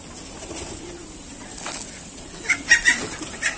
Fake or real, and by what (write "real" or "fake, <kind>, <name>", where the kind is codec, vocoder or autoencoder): real